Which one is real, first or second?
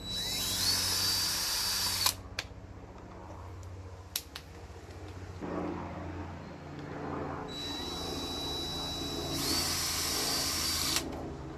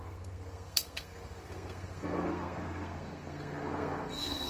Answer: first